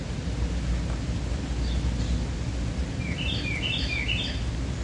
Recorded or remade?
recorded